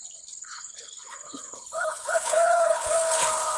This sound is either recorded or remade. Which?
remade